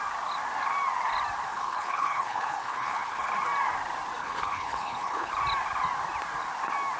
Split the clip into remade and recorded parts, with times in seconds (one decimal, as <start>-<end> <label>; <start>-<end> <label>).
0.0-1.5 recorded; 1.5-3.3 remade; 3.3-4.2 recorded; 4.2-5.3 remade; 5.3-7.0 recorded